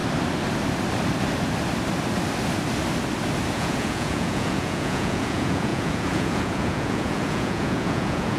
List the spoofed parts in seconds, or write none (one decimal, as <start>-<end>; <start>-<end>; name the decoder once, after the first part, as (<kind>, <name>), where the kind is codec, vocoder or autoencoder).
3.5-8.4 (vocoder, Vocos)

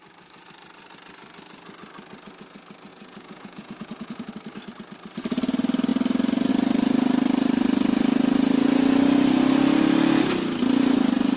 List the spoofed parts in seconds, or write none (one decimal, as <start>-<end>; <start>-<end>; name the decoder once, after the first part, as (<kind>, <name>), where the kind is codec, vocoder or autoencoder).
2.9-4.3 (vocoder, Vocos)

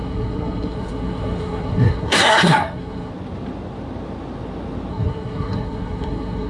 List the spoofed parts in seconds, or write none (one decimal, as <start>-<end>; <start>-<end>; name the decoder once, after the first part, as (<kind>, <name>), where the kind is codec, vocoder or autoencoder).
0.0-3.1 (codec, SNAC); 4.9-6.5

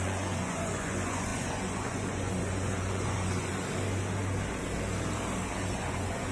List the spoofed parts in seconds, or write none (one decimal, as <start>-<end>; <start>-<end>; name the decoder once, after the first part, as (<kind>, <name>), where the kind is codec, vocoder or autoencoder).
0.0-3.5 (vocoder, Vocos); 5.7-6.3

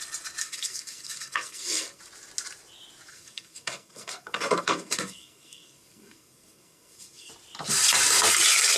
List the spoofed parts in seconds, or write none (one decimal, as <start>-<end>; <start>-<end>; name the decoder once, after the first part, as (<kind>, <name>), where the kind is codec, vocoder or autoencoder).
0.4-2.0 (codec, SNAC); 3.1-7.3

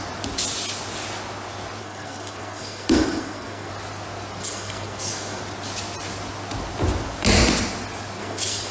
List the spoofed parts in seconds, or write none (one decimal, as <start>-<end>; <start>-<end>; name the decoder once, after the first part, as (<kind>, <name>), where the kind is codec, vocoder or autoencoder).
1.8-3.7 (codec, SNAC); 4.4-5.4; 8.2-8.7

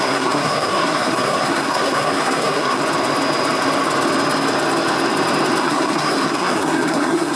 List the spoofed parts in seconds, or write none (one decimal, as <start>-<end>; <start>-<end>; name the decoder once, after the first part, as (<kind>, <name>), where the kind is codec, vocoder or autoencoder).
0.0-2.8 (codec, SNAC); 5.6-7.4